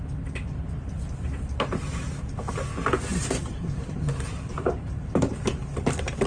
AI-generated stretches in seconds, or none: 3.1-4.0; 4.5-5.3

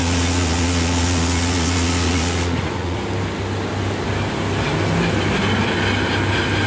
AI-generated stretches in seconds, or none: 0.0-3.0

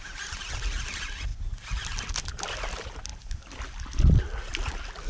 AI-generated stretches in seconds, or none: 1.3-2.4

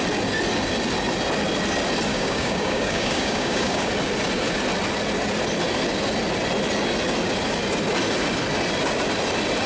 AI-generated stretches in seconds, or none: 2.1-3.9

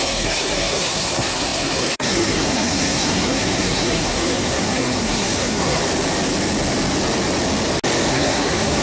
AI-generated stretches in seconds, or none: 0.0-5.8; 8.1-8.8